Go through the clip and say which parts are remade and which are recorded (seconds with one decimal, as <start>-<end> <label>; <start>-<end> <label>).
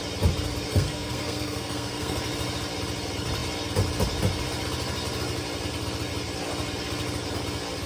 0.0-0.7 recorded; 0.7-2.2 remade; 2.2-7.9 recorded